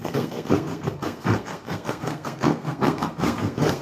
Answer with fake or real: fake